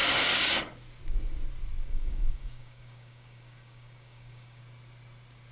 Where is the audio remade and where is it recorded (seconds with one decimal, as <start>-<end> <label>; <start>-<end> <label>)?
0.0-1.9 recorded; 1.9-4.6 remade; 4.6-5.5 recorded